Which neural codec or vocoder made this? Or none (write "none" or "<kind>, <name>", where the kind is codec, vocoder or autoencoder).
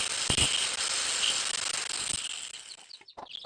none